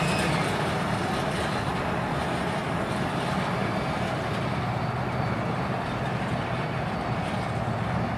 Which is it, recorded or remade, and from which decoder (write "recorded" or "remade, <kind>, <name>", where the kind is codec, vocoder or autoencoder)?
recorded